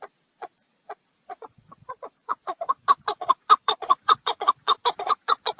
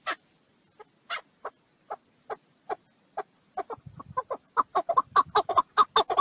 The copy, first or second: first